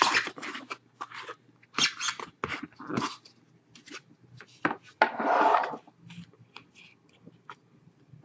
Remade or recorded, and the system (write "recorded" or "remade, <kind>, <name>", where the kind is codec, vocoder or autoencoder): recorded